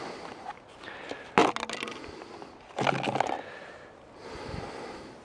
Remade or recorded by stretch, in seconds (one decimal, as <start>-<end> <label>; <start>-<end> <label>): 0.0-5.2 recorded